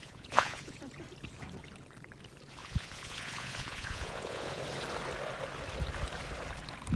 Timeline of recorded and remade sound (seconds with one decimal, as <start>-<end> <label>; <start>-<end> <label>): 0.0-0.8 remade; 0.8-2.6 recorded; 2.6-4.6 remade; 4.6-7.0 recorded